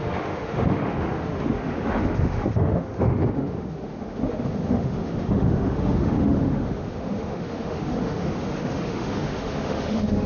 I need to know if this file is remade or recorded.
remade